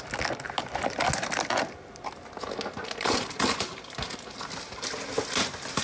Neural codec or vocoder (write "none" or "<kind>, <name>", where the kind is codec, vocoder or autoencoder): none